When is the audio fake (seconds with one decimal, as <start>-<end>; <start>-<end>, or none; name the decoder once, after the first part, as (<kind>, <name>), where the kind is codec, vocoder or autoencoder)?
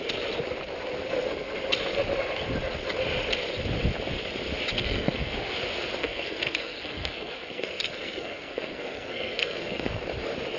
4.7-5.3 (codec, SNAC); 6.0-10.0